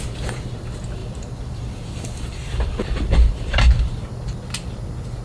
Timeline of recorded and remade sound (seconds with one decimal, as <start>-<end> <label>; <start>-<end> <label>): 0.0-1.0 recorded; 1.0-4.0 remade; 4.0-5.2 recorded

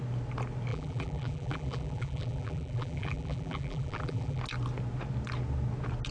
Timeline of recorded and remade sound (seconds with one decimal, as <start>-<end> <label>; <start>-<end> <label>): 0.0-0.7 recorded; 0.7-4.4 remade; 4.4-6.1 recorded